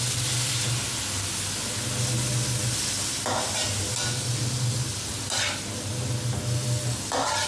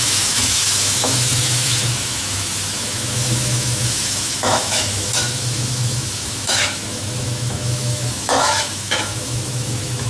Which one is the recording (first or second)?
first